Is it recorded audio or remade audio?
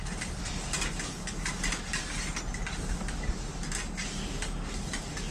recorded